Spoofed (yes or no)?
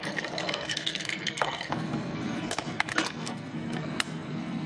yes